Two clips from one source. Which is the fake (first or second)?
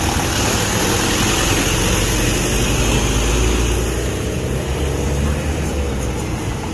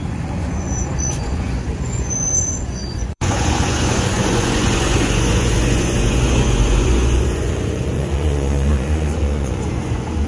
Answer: second